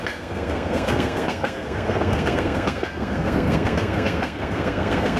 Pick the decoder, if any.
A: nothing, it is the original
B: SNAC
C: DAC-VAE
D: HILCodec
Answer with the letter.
B